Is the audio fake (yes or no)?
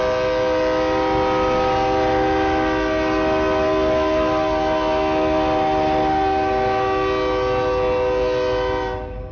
no